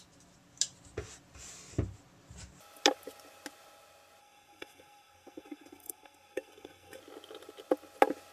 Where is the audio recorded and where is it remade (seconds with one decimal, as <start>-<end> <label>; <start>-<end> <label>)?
0.0-4.2 recorded; 4.2-7.0 remade; 7.0-8.3 recorded